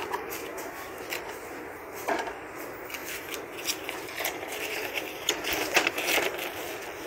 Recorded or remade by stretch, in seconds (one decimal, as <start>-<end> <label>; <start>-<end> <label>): 0.0-0.5 recorded; 0.5-1.6 remade; 1.6-3.0 recorded; 3.0-5.0 remade; 5.0-7.1 recorded